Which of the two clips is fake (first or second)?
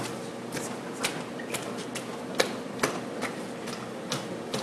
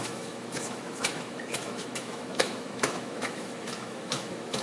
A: second